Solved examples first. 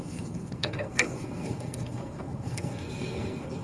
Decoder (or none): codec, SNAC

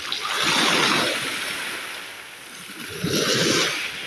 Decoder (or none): none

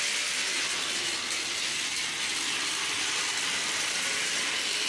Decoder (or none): none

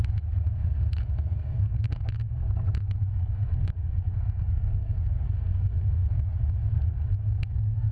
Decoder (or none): codec, SNAC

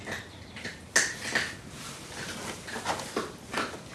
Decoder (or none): none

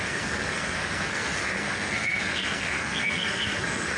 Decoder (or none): codec, SNAC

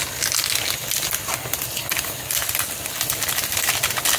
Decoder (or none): none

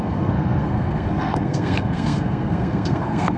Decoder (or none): codec, SNAC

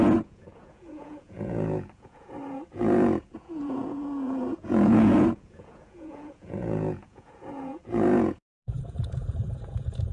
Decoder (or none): vocoder, Vocos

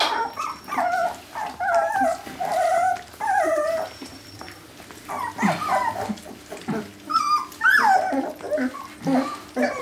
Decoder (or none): none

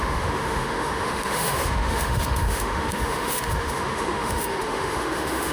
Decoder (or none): autoencoder, DAC-VAE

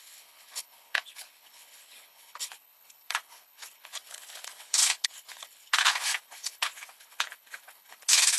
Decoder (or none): codec, HILCodec